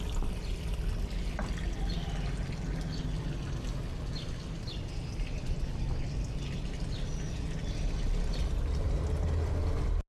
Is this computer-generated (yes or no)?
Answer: no